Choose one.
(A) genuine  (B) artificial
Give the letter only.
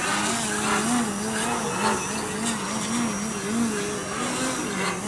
A